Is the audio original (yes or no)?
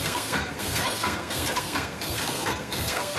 no